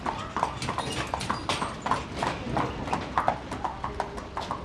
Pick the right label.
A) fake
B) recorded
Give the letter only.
B